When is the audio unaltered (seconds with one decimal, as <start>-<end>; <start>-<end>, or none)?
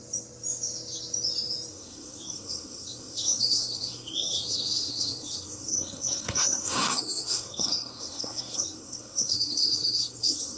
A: 0.0-1.7